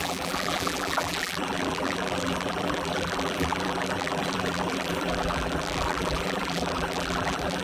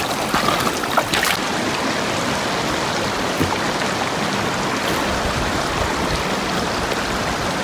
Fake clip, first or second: first